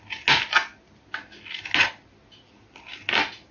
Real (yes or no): yes